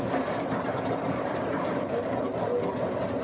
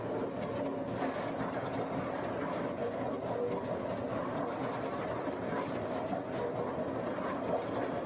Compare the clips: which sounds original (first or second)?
second